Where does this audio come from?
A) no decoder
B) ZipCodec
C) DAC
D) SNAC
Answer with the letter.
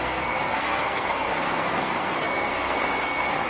D